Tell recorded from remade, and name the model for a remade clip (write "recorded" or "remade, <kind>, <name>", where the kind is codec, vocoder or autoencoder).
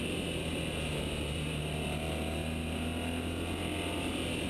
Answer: recorded